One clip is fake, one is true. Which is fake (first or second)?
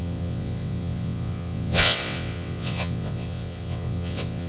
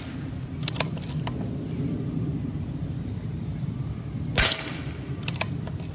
first